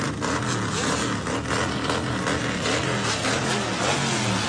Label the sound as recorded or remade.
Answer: recorded